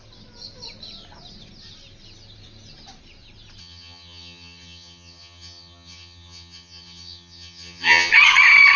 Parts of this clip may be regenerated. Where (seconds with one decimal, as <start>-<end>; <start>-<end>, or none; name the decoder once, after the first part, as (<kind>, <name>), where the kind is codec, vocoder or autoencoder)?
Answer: 3.6-8.1 (vocoder, HiFi-GAN)